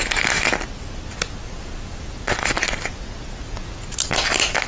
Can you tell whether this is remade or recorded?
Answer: recorded